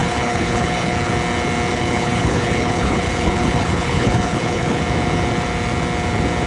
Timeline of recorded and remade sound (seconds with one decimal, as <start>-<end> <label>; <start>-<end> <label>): 0.0-1.1 remade; 1.1-1.7 recorded; 1.7-4.8 remade; 4.8-6.5 recorded